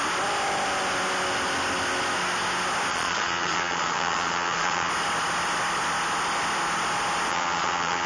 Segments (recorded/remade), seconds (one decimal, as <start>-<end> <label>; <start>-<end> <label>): 0.0-2.9 recorded; 2.9-4.9 remade; 4.9-7.3 recorded; 7.3-8.1 remade